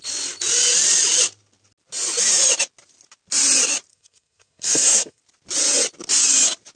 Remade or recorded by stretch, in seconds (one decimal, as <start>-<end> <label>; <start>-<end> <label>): 0.0-3.9 recorded; 3.9-5.2 remade; 5.2-6.8 recorded